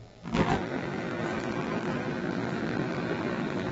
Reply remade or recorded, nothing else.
remade